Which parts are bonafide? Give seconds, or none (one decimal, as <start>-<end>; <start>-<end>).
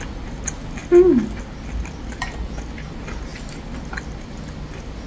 0.0-5.1